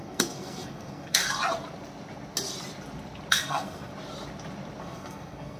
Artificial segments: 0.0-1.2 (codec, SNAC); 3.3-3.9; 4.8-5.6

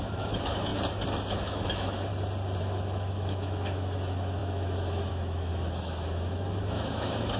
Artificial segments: 0.0-0.7 (autoencoder, DAC-VAE); 1.3-2.1; 2.6-7.4

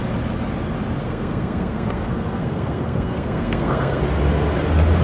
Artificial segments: 1.0-4.0 (codec, SNAC)

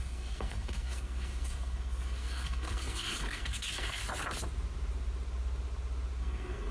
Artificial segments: 0.0-4.0 (codec, SNAC); 6.2-6.7

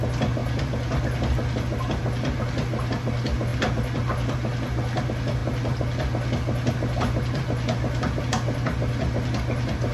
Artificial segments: none

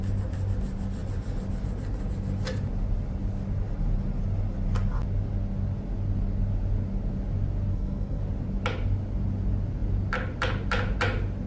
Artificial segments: 7.7-8.2 (codec, SNAC)

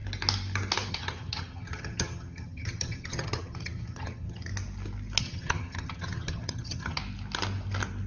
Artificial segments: 0.9-4.5 (vocoder, HiFi-GAN); 5.2-7.0